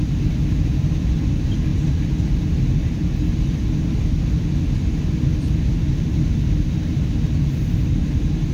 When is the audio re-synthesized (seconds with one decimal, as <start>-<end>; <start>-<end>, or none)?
none